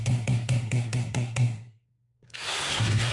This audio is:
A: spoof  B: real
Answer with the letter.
A